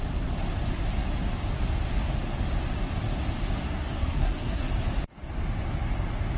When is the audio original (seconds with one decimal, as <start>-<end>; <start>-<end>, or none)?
0.0-3.6; 4.7-6.4